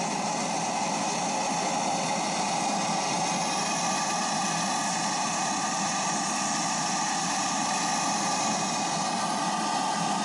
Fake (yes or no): no